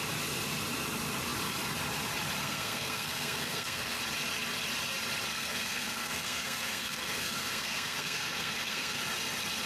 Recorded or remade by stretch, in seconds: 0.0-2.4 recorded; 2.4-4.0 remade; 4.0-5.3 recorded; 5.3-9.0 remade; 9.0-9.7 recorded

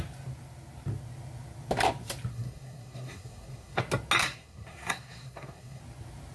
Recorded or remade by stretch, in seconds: 0.0-2.3 recorded; 2.3-3.8 remade; 3.8-4.2 recorded; 4.2-5.8 remade; 5.8-6.3 recorded